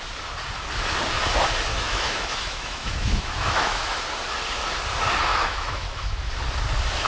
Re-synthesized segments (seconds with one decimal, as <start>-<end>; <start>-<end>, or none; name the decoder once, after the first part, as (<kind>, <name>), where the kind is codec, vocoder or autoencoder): 1.7-4.0 (autoencoder, DAC-VAE); 5.3-6.3